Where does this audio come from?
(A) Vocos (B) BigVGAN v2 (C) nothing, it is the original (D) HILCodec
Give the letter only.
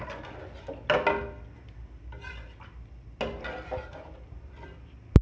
C